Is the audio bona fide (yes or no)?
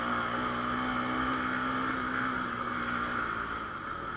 yes